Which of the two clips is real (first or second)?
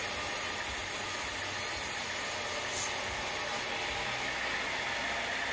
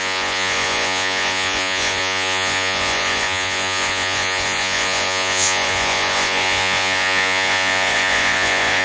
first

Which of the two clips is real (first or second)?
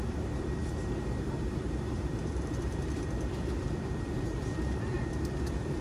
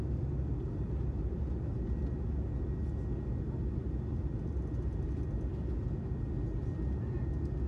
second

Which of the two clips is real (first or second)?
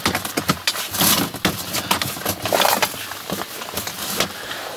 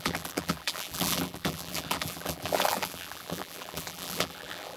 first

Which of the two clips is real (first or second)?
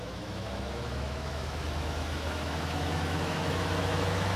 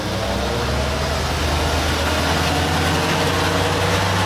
second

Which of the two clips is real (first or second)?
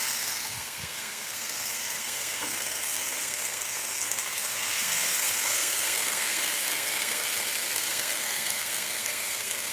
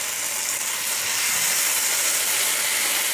second